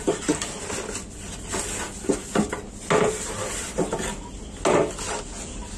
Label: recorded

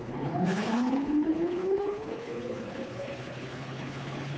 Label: remade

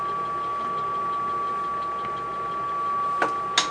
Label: recorded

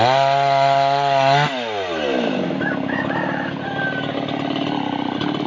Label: recorded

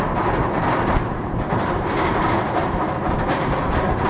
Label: recorded